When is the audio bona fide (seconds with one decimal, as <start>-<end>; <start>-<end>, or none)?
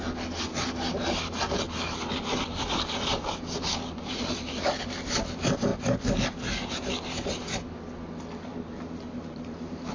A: 0.0-0.5; 5.1-8.5